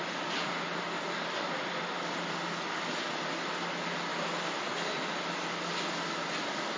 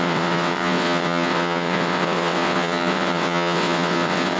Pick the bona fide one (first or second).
first